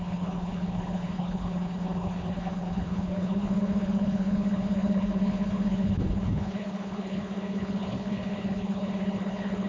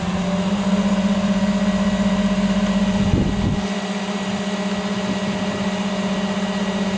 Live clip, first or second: second